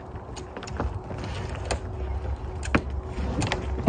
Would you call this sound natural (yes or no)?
yes